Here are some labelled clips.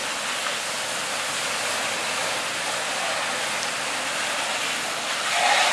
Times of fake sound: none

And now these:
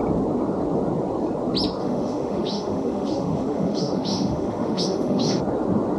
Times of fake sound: 1.8-5.4

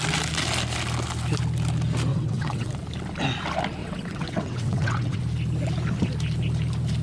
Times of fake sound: 2.1-2.7; 3.8-5.2

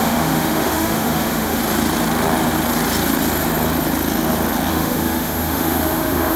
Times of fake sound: 0.0-1.6; 4.7-6.4

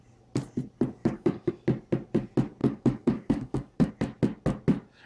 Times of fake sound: 1.0-1.5; 2.6-3.9